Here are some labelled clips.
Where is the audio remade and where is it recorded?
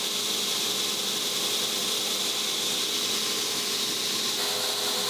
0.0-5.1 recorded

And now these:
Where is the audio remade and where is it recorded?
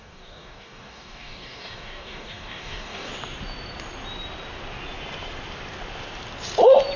0.0-3.1 remade; 3.1-7.0 recorded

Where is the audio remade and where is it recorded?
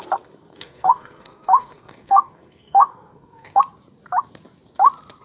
0.0-0.5 recorded; 0.5-3.6 remade; 3.6-5.2 recorded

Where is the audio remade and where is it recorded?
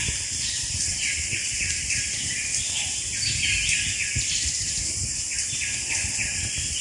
0.0-6.8 recorded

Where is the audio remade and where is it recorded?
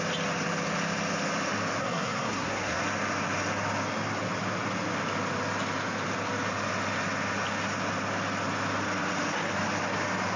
0.0-1.8 recorded; 1.8-2.8 remade; 2.8-10.4 recorded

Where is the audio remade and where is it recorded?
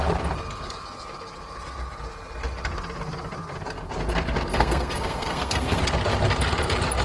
0.0-4.5 recorded; 4.5-5.8 remade; 5.8-7.0 recorded